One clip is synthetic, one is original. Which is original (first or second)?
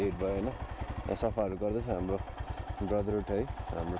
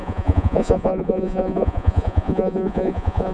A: first